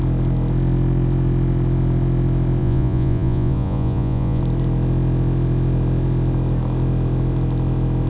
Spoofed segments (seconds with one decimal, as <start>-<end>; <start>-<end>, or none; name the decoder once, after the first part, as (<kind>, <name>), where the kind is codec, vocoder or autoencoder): 2.6-4.4 (vocoder, Vocos)